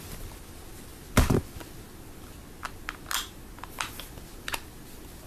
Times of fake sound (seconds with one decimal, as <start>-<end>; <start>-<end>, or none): none